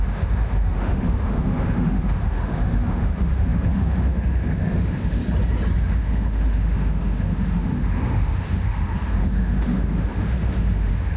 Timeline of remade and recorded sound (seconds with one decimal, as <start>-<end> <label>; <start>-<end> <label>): 0.0-5.2 remade; 5.2-5.8 recorded; 5.8-11.2 remade